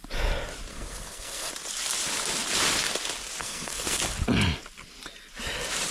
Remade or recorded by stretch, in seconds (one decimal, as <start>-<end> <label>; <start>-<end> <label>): 0.0-0.7 recorded; 0.7-1.5 remade; 1.5-3.4 recorded; 3.4-4.0 remade; 4.0-5.9 recorded